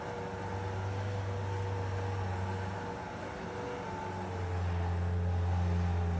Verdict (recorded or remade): recorded